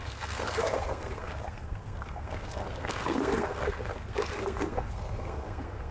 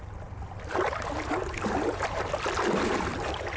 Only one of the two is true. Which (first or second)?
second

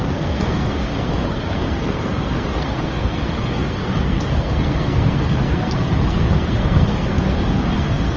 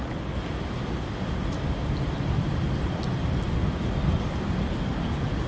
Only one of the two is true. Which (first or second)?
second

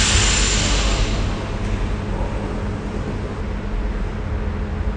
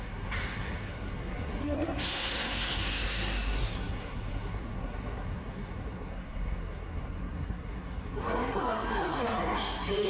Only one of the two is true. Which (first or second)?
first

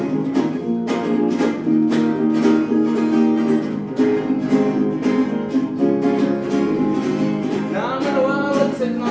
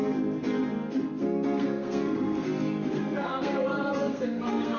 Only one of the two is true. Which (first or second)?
first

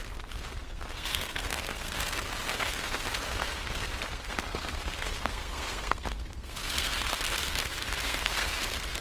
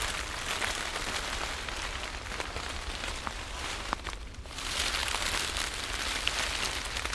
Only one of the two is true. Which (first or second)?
second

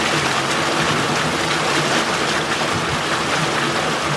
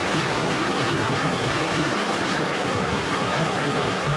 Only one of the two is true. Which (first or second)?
first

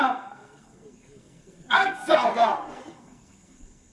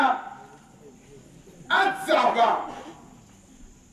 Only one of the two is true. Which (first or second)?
second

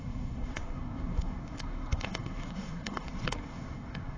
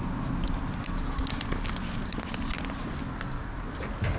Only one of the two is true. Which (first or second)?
second